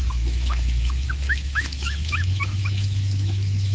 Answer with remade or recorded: remade